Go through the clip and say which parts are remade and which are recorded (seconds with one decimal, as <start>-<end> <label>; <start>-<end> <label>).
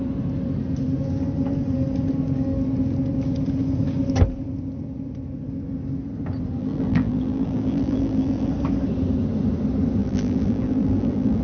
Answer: 0.0-6.6 recorded; 6.6-8.5 remade; 8.5-10.0 recorded; 10.0-11.4 remade